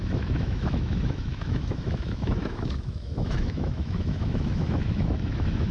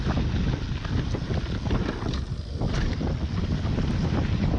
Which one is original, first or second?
second